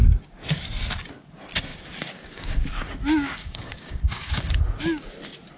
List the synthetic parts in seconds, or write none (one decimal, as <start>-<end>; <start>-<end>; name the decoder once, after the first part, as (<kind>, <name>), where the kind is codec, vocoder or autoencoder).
0.0-0.6 (codec, DAC); 1.7-4.6